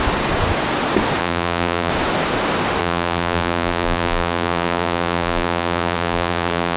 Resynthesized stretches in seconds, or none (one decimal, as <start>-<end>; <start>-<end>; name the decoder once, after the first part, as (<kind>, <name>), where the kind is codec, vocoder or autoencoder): 1.2-1.9 (vocoder, BigVGAN v2); 2.8-6.8

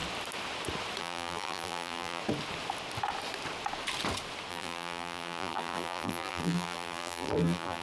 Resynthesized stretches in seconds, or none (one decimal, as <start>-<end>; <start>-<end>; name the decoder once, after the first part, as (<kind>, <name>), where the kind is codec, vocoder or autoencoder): 1.0-2.2 (vocoder, BigVGAN v2); 4.5-7.8

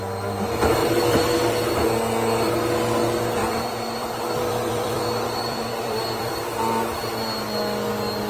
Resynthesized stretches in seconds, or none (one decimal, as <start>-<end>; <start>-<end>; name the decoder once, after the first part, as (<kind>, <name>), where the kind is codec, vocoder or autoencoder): 0.8-1.6 (vocoder, BigVGAN v2); 3.4-7.1

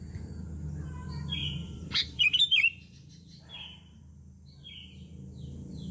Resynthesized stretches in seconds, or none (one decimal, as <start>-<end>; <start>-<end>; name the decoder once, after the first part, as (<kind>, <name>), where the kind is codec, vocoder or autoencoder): 1.4-4.0 (vocoder, BigVGAN v2)

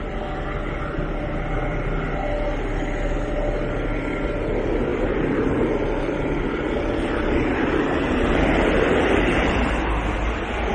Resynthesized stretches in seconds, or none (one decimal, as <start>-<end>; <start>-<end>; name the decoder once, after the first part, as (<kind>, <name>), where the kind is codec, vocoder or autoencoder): 4.9-9.7 (vocoder, BigVGAN v2)

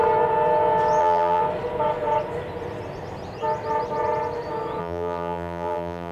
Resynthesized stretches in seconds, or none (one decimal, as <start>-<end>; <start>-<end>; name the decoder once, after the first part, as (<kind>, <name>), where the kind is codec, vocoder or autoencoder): 1.0-1.4 (vocoder, BigVGAN v2); 4.8-6.1

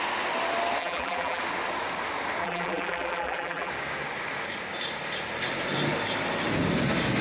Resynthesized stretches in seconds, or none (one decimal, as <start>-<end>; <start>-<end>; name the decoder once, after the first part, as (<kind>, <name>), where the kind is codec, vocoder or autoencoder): 0.8-1.4 (vocoder, BigVGAN v2); 2.4-3.7